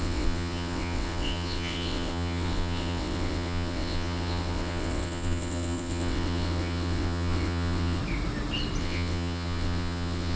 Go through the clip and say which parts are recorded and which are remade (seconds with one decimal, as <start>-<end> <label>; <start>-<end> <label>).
0.0-8.0 remade; 8.0-8.8 recorded; 8.8-10.4 remade